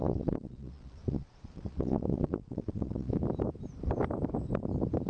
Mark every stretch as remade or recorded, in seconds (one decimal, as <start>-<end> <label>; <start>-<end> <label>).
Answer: 0.0-3.1 remade; 3.1-5.1 recorded